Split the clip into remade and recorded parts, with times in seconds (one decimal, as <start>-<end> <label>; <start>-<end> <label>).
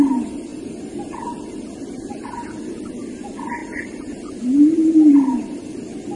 0.0-3.6 recorded; 3.6-5.6 remade; 5.6-6.2 recorded